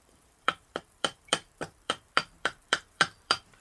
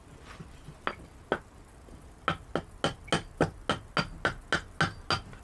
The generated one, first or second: first